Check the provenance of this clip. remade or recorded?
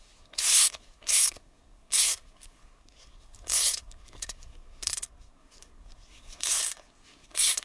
remade